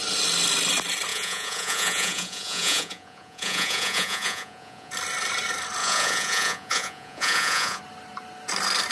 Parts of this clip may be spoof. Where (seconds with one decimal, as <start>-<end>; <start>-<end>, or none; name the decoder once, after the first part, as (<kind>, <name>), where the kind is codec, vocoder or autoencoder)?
1.1-4.9 (vocoder, Vocos); 5.8-7.8